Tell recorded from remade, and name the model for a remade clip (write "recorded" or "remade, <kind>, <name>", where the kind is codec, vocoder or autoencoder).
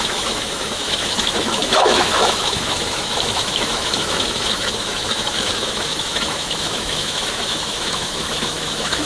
remade, autoencoder, DAC-VAE